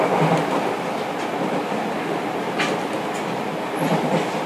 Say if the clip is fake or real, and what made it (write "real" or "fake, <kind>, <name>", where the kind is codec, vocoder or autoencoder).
real